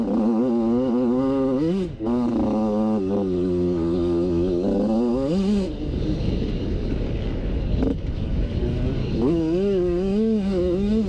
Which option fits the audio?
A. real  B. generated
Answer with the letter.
B